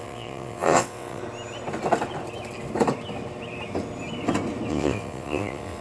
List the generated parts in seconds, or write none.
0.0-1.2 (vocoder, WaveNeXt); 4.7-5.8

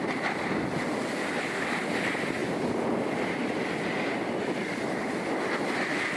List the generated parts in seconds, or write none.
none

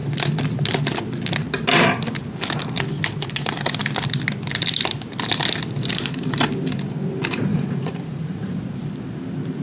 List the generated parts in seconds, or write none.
7.5-8.5 (vocoder, Vocos)

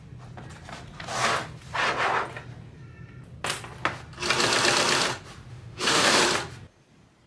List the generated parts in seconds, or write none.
5.5-6.2 (autoencoder, DAC-VAE)

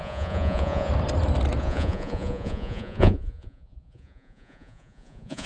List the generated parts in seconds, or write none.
0.0-0.9 (vocoder, Vocos); 1.6-5.5

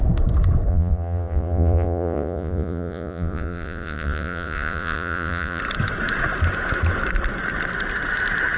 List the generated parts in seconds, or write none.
0.7-5.6 (vocoder, Vocos)